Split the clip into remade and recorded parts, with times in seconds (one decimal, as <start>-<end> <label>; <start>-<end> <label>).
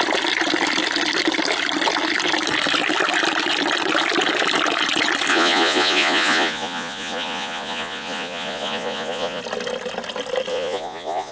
0.0-5.3 recorded; 5.3-9.4 remade; 9.4-10.5 recorded; 10.5-11.3 remade